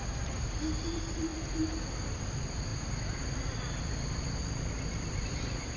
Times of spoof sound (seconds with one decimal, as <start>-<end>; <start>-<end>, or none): none